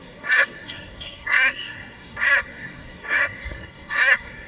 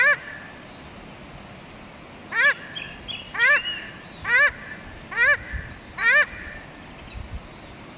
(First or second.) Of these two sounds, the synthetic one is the first